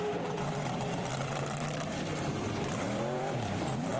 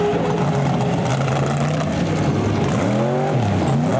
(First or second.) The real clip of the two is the second